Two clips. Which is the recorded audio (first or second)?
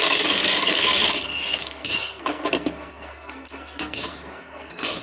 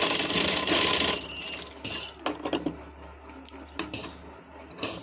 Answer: second